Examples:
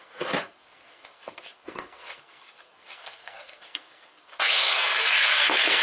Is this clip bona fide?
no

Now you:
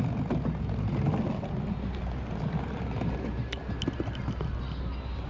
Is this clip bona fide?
yes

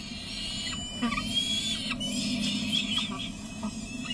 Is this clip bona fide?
yes